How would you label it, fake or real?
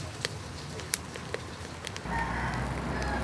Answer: real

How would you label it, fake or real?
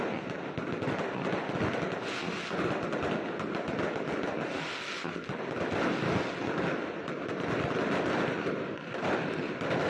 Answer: real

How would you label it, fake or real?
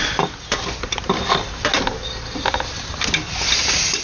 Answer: real